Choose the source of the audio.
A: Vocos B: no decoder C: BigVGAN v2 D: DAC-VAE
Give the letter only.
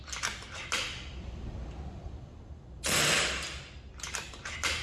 B